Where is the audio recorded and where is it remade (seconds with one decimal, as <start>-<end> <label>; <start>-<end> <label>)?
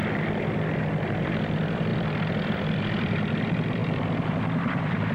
0.0-1.0 recorded; 1.0-5.1 remade